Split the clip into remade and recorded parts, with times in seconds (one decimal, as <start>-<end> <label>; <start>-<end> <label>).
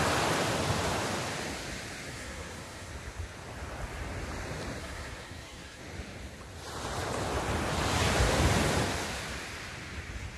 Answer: 0.0-2.1 recorded; 2.1-2.9 remade; 2.9-4.8 recorded; 4.8-5.8 remade; 5.8-10.4 recorded